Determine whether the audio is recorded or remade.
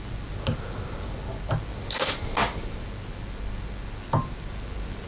recorded